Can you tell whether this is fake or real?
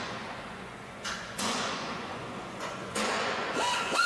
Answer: fake